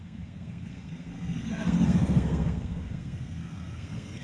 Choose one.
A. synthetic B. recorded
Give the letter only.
A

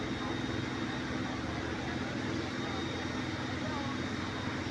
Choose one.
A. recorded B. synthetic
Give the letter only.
A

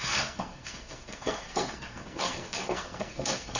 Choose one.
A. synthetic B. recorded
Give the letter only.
A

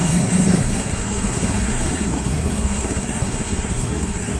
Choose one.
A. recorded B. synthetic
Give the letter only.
B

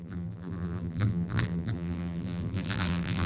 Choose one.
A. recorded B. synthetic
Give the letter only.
B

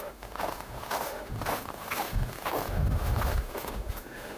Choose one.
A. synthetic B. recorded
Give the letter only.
A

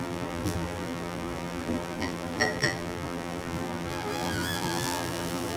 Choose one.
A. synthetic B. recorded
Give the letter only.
A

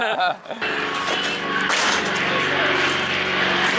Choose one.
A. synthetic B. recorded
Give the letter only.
B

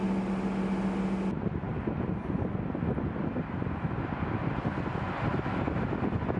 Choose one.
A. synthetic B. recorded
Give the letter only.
B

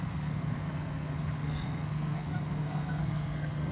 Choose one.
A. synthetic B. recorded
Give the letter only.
A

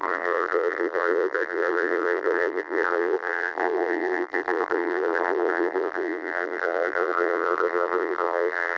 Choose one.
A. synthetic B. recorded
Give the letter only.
A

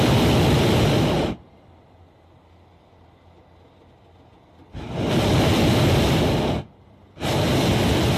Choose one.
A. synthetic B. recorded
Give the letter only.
B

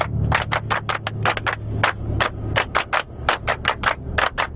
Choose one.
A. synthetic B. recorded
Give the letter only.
B